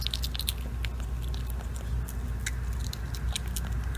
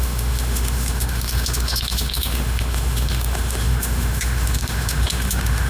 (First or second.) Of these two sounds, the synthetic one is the second